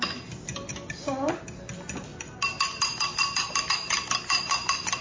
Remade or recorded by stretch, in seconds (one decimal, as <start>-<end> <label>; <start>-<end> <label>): 0.0-0.7 recorded; 0.7-1.3 remade; 1.3-5.0 recorded